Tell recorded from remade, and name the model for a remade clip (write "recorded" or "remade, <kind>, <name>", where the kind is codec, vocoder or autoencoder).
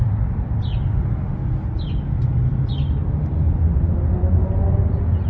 recorded